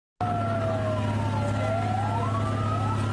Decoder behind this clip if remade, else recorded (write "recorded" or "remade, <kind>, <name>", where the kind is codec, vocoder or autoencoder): recorded